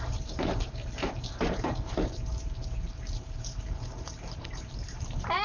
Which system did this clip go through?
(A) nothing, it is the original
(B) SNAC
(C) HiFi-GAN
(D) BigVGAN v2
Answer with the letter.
D